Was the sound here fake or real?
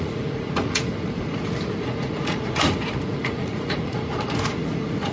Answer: fake